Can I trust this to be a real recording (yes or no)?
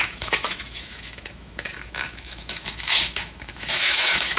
no